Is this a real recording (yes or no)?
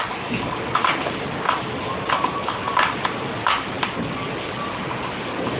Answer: yes